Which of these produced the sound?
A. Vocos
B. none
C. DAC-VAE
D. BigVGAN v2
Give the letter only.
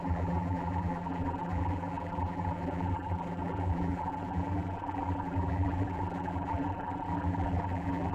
D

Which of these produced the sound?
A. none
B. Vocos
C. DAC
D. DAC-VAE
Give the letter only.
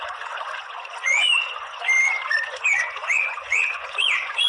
B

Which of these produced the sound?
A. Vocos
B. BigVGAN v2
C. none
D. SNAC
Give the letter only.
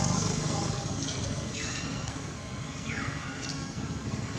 D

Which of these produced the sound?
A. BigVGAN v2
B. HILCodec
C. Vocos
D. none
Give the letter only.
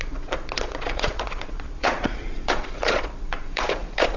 C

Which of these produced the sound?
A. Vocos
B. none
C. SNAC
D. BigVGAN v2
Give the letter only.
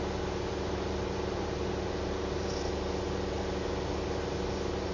B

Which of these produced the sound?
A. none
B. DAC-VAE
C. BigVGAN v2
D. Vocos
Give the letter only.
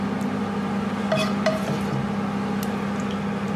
A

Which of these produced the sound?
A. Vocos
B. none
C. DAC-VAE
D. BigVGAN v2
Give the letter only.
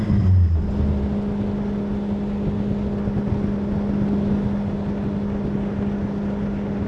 B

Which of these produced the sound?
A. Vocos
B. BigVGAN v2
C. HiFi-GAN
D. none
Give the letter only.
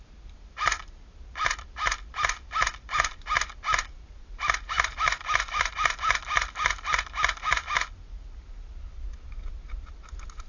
D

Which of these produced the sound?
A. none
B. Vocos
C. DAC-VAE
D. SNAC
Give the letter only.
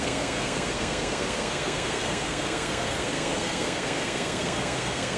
D